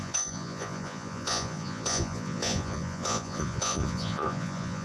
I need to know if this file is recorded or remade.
remade